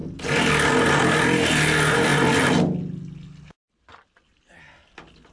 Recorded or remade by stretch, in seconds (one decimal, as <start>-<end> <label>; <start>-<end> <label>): 0.0-5.3 recorded